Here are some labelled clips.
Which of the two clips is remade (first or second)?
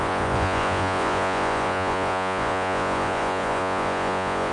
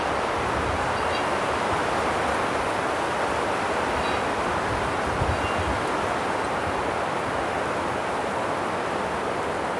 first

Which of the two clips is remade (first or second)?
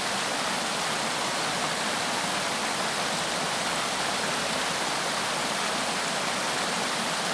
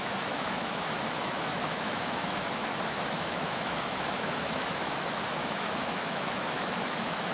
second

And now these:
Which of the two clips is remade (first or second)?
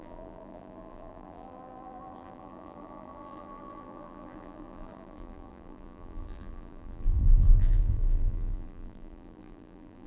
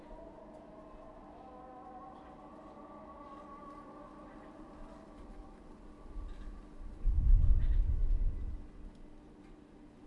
first